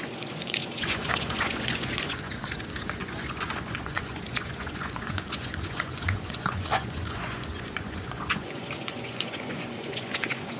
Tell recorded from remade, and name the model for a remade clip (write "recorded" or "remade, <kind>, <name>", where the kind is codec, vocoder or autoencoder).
remade, vocoder, Vocos